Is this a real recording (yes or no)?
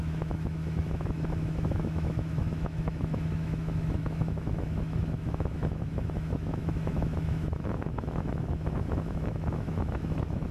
no